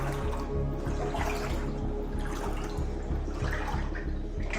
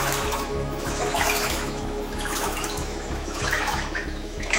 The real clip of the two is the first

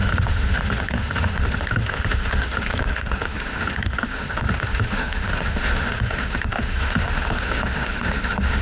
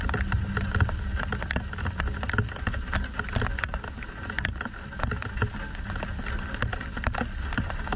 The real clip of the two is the second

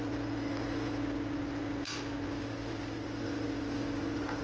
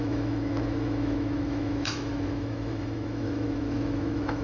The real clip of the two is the first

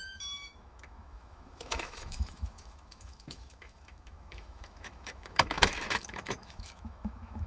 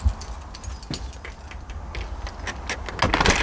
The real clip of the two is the second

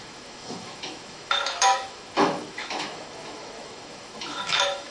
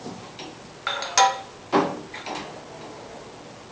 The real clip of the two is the second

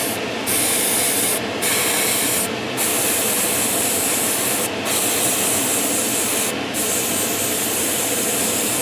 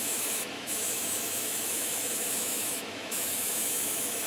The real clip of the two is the first